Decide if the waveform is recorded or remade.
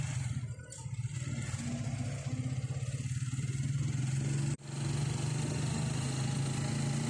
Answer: recorded